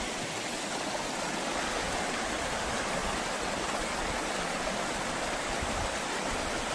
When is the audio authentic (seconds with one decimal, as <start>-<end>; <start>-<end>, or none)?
0.0-6.7